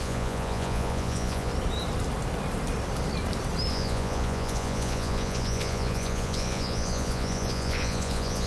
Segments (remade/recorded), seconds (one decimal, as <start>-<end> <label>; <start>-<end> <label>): 0.0-1.5 remade; 1.5-3.7 recorded; 3.7-8.5 remade